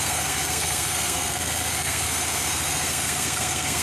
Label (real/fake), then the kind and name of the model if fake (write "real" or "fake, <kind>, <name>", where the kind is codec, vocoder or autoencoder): fake, codec, SNAC